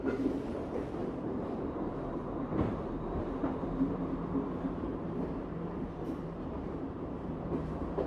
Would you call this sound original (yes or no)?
no